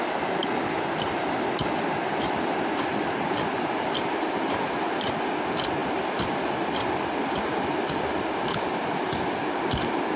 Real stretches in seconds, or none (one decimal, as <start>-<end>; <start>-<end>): 0.0-0.4; 3.3-5.8; 8.9-10.2